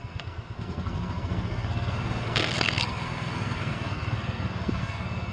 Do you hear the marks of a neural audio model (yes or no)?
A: yes